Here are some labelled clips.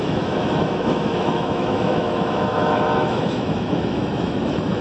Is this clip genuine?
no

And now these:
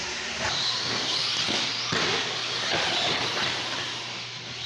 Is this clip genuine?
yes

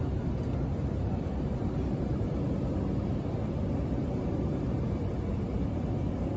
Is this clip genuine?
no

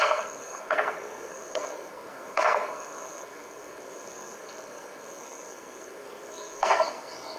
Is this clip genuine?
no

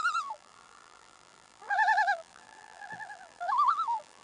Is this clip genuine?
no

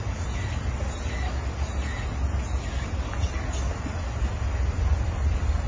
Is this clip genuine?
yes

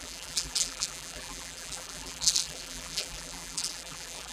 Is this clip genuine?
no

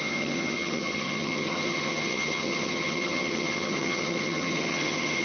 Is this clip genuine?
no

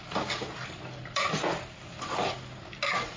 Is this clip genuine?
yes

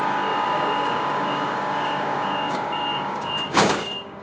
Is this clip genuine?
no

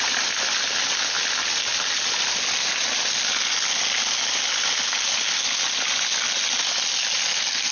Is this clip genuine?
yes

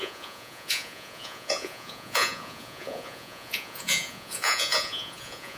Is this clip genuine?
no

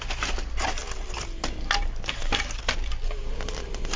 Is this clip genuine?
yes